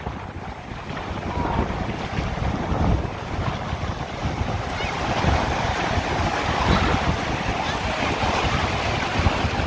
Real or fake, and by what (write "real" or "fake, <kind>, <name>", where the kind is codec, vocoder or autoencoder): real